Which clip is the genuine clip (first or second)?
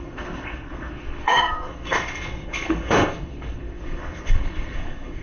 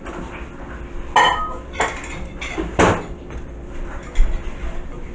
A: second